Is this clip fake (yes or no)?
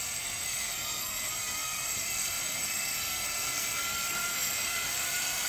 yes